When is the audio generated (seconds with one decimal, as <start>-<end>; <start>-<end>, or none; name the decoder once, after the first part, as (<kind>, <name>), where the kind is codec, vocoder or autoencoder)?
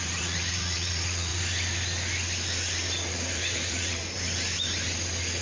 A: 0.0-1.3 (vocoder, Vocos); 3.1-4.0